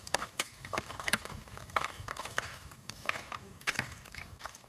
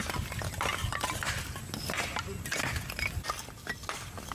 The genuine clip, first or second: second